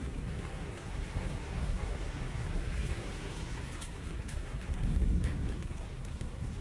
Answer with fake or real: fake